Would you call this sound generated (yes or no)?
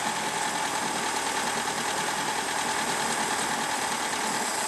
no